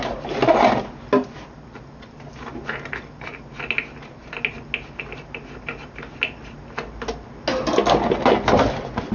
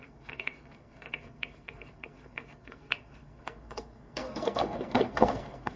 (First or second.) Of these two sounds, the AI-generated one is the second